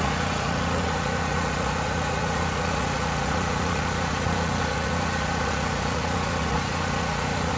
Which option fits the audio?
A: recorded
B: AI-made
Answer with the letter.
B